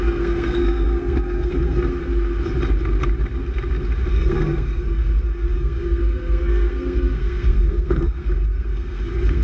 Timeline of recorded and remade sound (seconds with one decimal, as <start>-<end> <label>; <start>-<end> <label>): 0.0-2.0 remade; 2.0-4.1 recorded; 4.1-9.4 remade

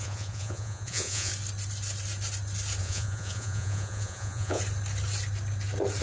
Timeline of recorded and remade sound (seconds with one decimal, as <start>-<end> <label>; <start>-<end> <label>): 0.0-1.3 remade; 1.3-2.8 recorded; 2.8-4.6 remade; 4.6-6.0 recorded